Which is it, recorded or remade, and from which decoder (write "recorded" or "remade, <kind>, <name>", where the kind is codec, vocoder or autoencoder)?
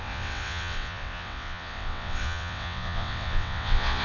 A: remade, vocoder, WaveNeXt